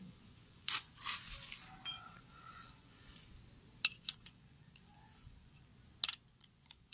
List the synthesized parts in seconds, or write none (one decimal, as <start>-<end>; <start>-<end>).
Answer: 0.0-0.9; 1.9-3.3; 3.9-5.7; 6.3-6.9